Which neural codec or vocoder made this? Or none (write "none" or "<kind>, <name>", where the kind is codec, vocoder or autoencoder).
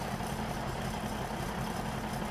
none